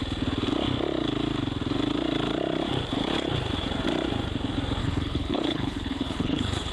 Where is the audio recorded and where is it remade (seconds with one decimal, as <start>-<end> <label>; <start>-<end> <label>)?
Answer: 0.0-4.8 recorded; 4.8-6.7 remade